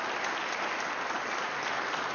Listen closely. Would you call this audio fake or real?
real